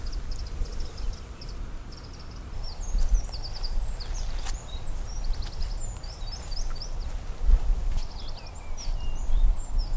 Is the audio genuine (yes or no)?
yes